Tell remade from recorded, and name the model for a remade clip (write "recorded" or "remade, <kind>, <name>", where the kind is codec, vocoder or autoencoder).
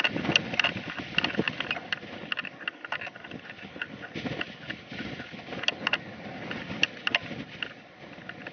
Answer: recorded